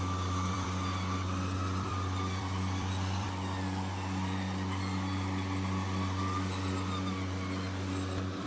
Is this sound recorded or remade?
remade